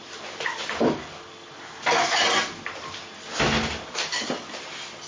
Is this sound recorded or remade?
recorded